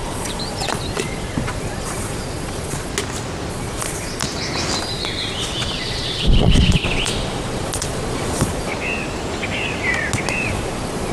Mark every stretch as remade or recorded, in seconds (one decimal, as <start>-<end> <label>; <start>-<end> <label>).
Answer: 0.0-2.9 remade; 2.9-3.5 recorded; 3.5-4.2 remade; 4.2-4.8 recorded; 4.8-8.7 remade; 8.7-10.3 recorded; 10.3-11.1 remade